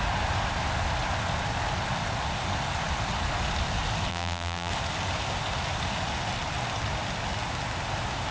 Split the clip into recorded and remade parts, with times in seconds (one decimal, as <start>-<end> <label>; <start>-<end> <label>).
0.0-4.1 recorded; 4.1-4.7 remade; 4.7-8.3 recorded